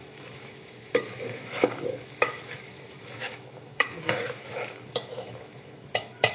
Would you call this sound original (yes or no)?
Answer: no